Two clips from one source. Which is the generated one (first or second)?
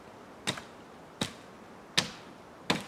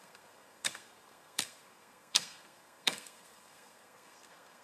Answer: second